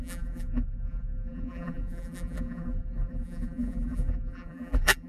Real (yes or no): no